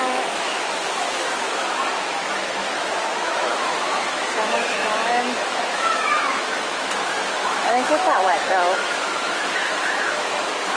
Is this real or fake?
fake